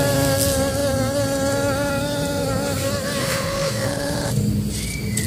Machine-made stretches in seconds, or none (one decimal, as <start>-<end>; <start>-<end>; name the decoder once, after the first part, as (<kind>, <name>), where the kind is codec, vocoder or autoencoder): 3.2-4.3 (autoencoder, DAC-VAE)